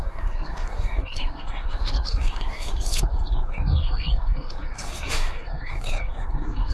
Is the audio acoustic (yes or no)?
no